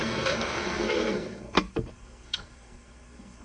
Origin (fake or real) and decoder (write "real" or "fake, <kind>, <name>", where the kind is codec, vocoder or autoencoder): fake, codec, SNAC